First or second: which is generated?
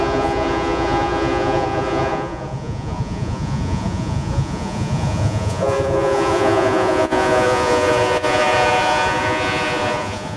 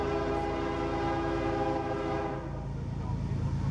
first